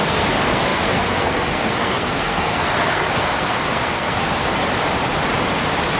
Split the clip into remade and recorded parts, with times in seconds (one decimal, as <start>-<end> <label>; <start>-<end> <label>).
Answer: 0.0-4.6 remade; 4.6-6.0 recorded